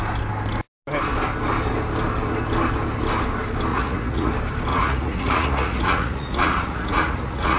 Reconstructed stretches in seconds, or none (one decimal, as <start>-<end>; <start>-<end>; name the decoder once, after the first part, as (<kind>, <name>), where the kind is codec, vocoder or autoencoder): 3.7-4.3 (vocoder, Vocos); 4.7-7.6